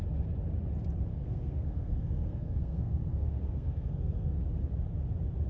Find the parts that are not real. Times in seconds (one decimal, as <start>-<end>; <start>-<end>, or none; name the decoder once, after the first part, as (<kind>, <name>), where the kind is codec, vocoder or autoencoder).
1.1-4.4 (codec, SNAC)

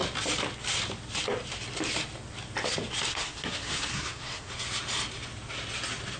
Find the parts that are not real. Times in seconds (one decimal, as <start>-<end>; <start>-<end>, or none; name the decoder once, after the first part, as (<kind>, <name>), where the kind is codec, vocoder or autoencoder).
3.1-4.5 (codec, SNAC)

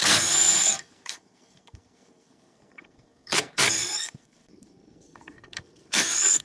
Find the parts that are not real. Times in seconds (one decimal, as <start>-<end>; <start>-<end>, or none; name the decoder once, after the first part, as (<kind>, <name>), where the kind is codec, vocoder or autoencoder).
0.0-6.4 (codec, SNAC)

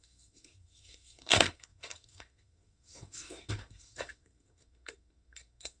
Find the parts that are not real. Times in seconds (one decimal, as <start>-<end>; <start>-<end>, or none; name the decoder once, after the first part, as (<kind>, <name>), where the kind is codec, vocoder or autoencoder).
0.0-5.8 (codec, SNAC)

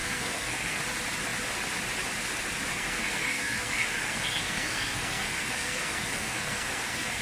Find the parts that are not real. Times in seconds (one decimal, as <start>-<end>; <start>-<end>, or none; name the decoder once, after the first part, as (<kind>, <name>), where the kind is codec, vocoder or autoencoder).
0.0-0.8 (codec, SNAC); 2.7-7.2

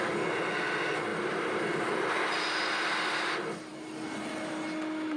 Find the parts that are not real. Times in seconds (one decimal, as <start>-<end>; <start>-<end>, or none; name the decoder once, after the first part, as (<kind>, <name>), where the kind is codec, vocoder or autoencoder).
none